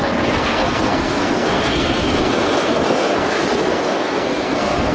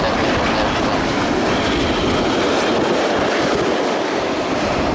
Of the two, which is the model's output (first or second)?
first